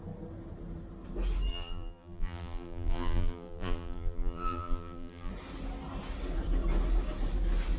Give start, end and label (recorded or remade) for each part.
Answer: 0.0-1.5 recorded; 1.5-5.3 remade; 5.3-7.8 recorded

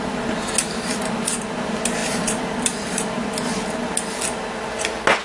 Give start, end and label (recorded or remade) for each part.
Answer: 0.0-2.0 recorded; 2.0-3.0 remade; 3.0-5.2 recorded